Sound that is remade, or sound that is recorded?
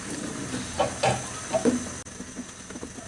recorded